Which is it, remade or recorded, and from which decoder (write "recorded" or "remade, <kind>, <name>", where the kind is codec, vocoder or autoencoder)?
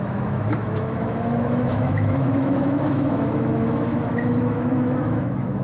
remade, autoencoder, DAC-VAE